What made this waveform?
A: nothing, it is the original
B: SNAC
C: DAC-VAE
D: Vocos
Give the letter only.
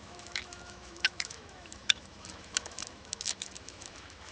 C